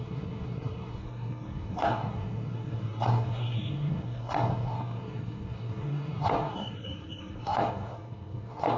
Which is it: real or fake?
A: fake